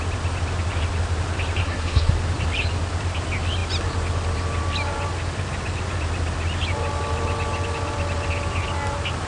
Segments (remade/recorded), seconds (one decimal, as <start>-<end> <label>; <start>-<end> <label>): 0.0-1.6 recorded; 1.6-2.1 remade; 2.1-9.3 recorded